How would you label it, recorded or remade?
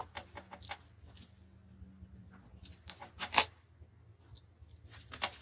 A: recorded